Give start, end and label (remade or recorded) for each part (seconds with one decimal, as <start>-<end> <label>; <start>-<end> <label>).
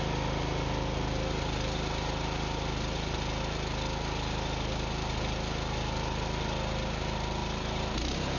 0.0-7.4 recorded; 7.4-8.4 remade